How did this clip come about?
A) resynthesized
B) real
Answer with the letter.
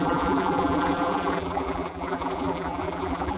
A